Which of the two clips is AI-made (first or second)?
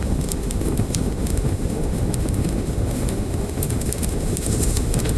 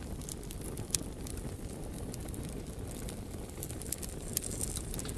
first